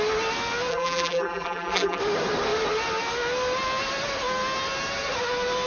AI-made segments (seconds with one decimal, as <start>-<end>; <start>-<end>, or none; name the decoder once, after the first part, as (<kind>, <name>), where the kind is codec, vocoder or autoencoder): 0.7-2.0 (vocoder, BigVGAN v2)

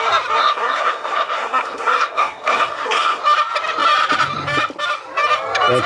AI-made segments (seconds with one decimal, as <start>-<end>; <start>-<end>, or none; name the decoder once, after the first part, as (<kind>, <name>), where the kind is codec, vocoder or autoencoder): 0.4-3.2 (codec, SNAC)

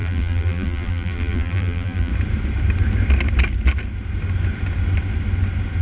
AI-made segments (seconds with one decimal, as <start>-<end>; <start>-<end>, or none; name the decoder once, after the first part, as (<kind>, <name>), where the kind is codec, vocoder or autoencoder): 0.0-2.1 (vocoder, BigVGAN v2)

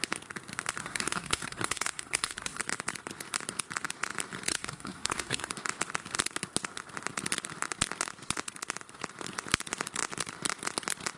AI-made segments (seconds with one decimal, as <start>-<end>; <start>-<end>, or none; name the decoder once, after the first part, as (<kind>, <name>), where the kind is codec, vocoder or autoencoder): 0.8-2.6 (codec, SNAC); 4.5-5.5

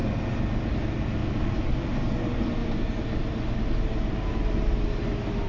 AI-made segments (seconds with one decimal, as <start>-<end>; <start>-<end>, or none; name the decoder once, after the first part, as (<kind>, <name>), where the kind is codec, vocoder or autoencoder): none

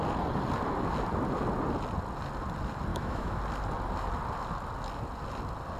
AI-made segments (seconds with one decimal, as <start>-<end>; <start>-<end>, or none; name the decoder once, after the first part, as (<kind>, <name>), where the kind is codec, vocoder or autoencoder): 2.9-3.4 (autoencoder, DAC-VAE)

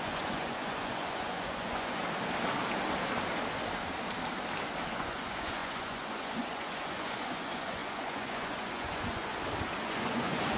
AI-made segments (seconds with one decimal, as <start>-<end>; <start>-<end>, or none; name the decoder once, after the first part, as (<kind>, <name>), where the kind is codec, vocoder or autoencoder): 0.0-2.0 (vocoder, Vocos); 4.9-9.3; 9.8-10.6

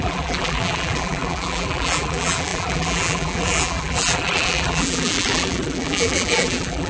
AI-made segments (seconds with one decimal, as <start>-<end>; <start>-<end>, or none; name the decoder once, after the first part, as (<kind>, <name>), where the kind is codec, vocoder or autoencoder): 0.0-6.9 (vocoder, BigVGAN v2)